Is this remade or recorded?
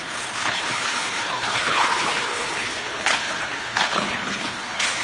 remade